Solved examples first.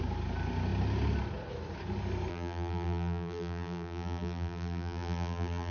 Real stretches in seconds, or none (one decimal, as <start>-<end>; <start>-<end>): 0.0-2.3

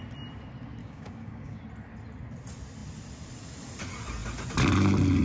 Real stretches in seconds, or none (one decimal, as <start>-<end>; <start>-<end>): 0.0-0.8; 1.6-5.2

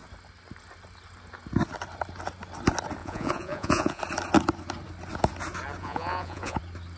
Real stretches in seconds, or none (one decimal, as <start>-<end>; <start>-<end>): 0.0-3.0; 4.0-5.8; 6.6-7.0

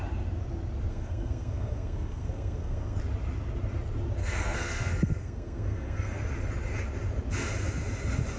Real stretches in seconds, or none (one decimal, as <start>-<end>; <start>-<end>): 0.0-0.9; 3.0-4.2; 6.2-8.4

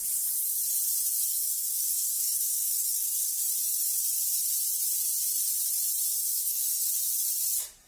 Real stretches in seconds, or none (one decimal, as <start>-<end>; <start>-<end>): 0.0-1.3; 3.4-6.2; 6.9-7.9